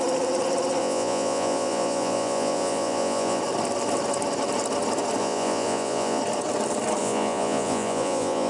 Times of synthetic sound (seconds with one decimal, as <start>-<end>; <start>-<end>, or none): 0.8-3.4; 5.2-6.2; 7.0-8.5